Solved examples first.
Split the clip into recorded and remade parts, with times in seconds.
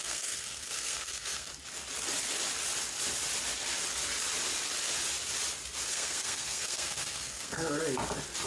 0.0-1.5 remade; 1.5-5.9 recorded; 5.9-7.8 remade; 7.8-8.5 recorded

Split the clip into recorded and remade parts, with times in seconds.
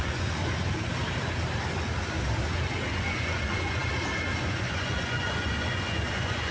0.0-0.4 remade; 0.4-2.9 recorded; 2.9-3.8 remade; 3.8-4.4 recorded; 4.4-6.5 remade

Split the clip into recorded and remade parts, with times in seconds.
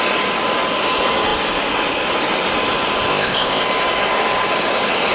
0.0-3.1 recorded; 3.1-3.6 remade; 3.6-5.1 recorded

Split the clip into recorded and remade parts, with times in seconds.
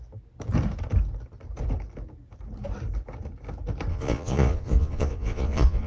0.0-3.9 recorded; 3.9-5.9 remade